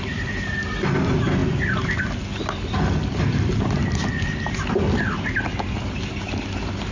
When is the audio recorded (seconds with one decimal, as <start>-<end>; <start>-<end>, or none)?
0.0-6.9

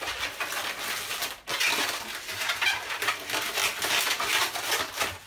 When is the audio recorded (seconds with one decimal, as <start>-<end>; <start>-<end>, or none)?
0.0-5.3

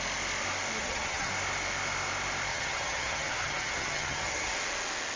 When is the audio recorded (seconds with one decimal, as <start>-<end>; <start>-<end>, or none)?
0.0-0.8; 1.3-2.5; 4.5-5.2

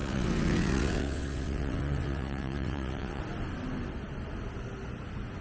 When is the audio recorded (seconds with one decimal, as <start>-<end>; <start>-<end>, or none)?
3.2-5.4

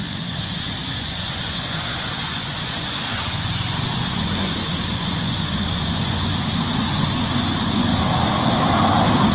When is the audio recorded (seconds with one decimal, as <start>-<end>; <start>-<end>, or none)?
7.9-9.3

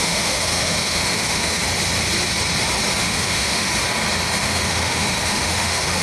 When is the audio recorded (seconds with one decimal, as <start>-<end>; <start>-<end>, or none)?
1.6-3.0; 3.7-4.4

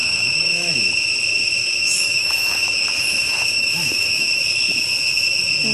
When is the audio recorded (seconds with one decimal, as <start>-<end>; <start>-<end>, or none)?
0.7-1.6; 4.3-5.7

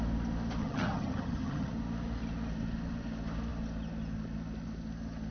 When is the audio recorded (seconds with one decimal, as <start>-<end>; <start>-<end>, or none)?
0.0-0.6; 1.7-5.3